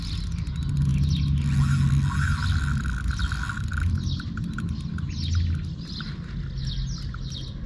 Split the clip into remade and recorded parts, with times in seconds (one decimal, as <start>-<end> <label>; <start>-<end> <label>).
0.0-7.7 recorded